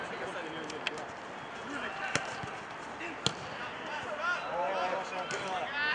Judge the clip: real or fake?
real